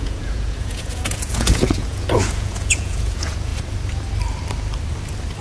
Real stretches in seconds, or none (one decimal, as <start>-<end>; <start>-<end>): 3.5-5.4